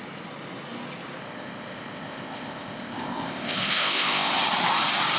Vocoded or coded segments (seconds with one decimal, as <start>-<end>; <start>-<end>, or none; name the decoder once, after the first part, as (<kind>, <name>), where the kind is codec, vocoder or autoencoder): 1.2-4.3 (codec, ZipCodec)